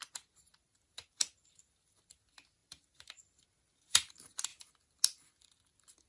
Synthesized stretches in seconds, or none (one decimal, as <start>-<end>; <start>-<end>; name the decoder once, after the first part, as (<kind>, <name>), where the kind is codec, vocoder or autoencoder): 0.5-1.6 (vocoder, BigVGAN v2); 2.6-4.1